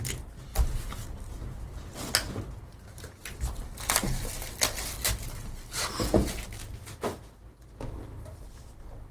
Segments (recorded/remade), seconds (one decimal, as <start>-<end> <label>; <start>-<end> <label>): 0.0-9.1 recorded